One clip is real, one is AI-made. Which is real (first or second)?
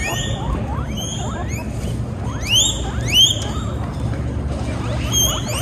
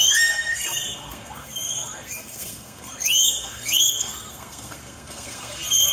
first